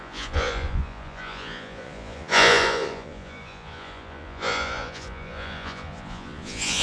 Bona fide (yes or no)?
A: no